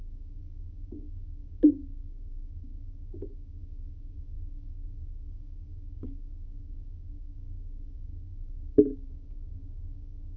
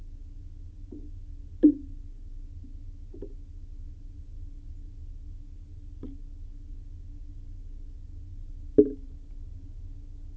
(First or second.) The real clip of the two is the second